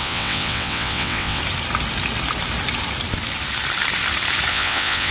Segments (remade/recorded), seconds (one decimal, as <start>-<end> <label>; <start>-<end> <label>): 0.0-1.4 remade; 1.4-4.5 recorded; 4.5-5.1 remade